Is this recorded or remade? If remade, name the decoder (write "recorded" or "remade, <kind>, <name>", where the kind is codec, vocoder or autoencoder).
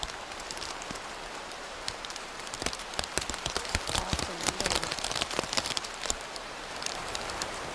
remade, vocoder, BigVGAN v2